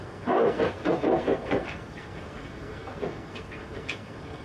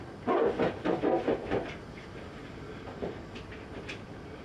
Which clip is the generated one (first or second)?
first